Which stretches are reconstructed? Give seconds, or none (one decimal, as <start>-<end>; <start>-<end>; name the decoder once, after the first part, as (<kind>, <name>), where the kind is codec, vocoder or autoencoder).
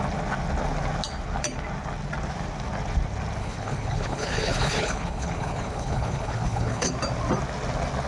3.4-6.9 (codec, HILCodec)